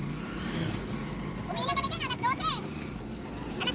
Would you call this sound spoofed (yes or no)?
no